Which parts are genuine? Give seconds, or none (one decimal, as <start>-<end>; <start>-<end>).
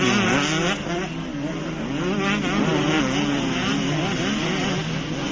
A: 0.0-5.3